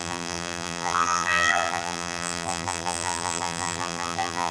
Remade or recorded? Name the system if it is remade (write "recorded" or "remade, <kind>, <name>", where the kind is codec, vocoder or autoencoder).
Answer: remade, vocoder, BigVGAN v2